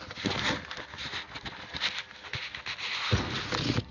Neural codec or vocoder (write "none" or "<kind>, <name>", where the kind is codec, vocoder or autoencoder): none